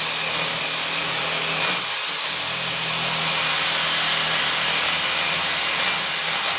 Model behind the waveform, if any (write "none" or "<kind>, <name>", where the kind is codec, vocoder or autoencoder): none